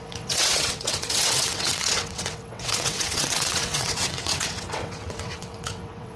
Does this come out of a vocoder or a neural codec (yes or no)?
yes